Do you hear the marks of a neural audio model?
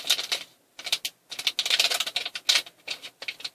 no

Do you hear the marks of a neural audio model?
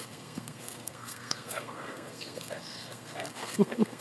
yes